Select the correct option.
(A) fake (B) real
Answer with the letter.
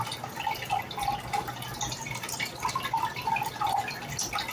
B